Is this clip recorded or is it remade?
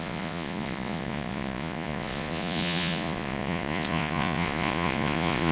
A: remade